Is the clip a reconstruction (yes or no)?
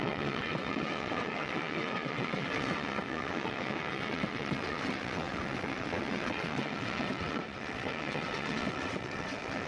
yes